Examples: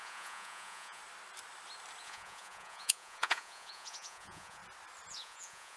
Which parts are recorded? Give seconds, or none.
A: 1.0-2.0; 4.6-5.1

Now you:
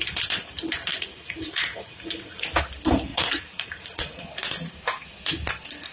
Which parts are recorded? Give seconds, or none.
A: 0.0-0.9; 2.4-3.1; 4.2-5.9

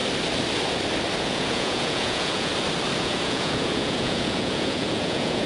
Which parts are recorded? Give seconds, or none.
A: 0.0-1.2; 2.5-3.0

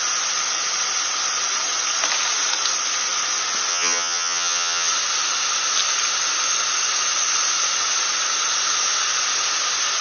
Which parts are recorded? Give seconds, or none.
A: 0.0-3.7; 4.9-10.0

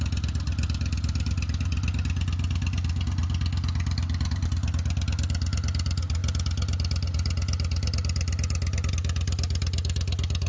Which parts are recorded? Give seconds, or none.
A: 0.0-10.5